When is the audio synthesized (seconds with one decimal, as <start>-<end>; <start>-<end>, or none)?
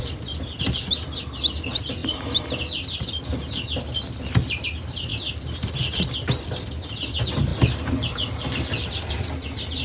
none